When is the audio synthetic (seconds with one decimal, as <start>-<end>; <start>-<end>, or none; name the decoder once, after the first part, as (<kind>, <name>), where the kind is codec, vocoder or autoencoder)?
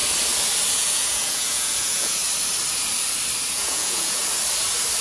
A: 0.7-2.2 (vocoder, Vocos); 3.5-4.2